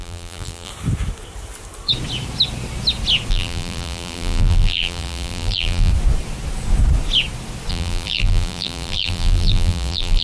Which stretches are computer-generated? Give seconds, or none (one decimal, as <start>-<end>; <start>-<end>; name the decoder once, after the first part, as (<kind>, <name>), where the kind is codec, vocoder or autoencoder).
0.0-0.7 (vocoder, BigVGAN v2); 3.3-5.9; 7.7-10.2